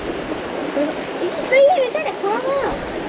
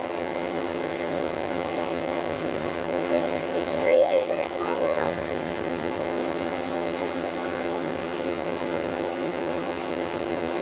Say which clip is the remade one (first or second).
second